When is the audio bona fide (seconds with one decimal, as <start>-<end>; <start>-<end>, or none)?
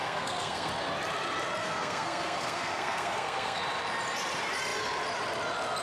0.7-1.6; 3.6-5.8